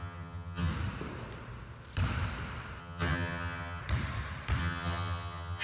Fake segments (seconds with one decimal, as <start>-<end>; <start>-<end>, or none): 0.0-0.7; 2.8-3.8; 4.6-5.6